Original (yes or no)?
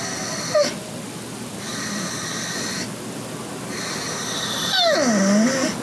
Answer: yes